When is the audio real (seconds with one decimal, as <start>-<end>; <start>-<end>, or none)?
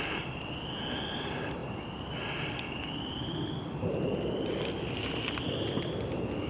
0.0-6.5